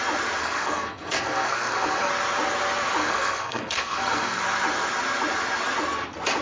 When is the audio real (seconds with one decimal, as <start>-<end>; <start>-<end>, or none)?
0.0-0.4; 2.1-3.0; 4.4-6.4